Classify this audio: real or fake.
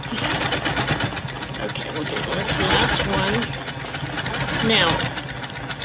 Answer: real